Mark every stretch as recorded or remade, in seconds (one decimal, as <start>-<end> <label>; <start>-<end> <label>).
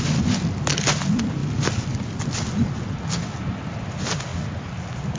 0.0-5.2 recorded